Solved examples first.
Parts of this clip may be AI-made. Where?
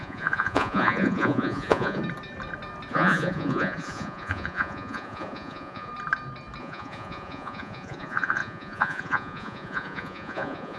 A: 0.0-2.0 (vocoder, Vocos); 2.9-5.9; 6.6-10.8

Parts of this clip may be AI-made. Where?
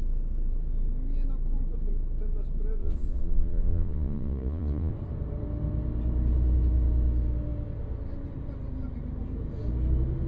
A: 2.8-4.9 (vocoder, Vocos)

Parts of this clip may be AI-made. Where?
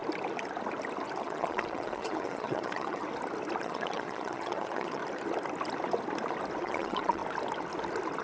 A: 1.2-3.0 (vocoder, Vocos); 3.6-5.0; 6.6-7.2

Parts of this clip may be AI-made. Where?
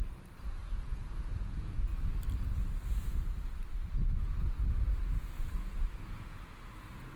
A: 0.0-1.9 (vocoder, Vocos); 2.9-3.6; 4.3-7.2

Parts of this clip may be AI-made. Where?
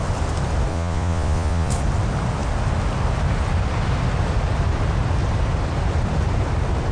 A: 0.7-1.7 (vocoder, Vocos)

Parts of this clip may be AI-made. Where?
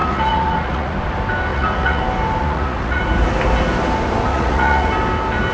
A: 0.0-1.0 (vocoder, Vocos); 1.5-2.0; 2.4-3.0; 4.3-4.9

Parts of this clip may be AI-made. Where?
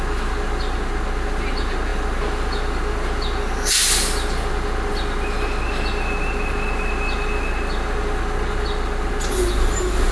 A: none